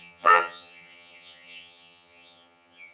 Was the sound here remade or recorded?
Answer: remade